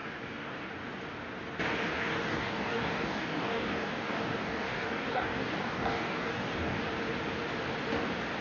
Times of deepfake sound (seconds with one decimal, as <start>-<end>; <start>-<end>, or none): 0.0-0.7; 1.9-6.8